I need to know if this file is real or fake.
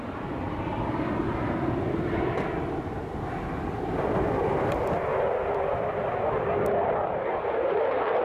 real